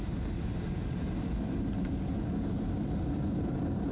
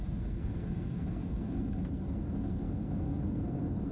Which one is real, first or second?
first